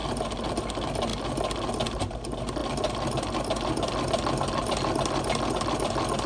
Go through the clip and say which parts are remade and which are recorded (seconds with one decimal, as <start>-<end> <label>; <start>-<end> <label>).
0.0-6.3 recorded